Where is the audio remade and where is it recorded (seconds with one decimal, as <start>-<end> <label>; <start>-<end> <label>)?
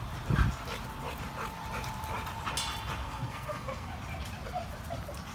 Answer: 0.0-3.0 recorded; 3.0-3.9 remade; 3.9-5.3 recorded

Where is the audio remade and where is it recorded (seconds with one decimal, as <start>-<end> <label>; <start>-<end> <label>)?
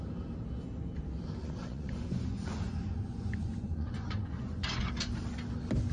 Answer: 0.0-1.4 recorded; 1.4-4.9 remade; 4.9-5.9 recorded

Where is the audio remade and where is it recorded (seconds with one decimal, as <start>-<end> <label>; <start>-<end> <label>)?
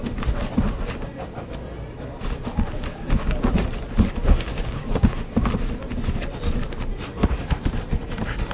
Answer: 0.0-2.9 recorded; 2.9-3.5 remade; 3.5-4.5 recorded; 4.5-5.1 remade; 5.1-8.5 recorded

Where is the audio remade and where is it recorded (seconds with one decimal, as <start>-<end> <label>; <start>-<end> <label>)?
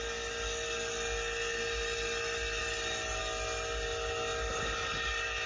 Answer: 0.0-5.5 recorded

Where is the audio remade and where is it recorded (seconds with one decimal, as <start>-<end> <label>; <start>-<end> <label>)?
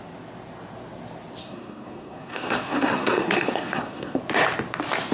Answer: 0.0-1.4 recorded; 1.4-4.2 remade; 4.2-5.1 recorded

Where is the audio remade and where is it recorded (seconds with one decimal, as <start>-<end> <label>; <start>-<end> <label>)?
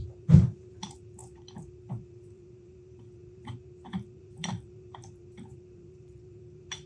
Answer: 0.0-6.9 remade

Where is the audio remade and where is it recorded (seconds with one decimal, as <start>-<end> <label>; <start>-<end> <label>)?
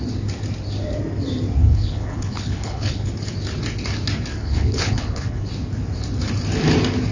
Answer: 0.0-1.6 recorded; 1.6-3.1 remade; 3.1-4.4 recorded; 4.4-5.5 remade; 5.5-7.1 recorded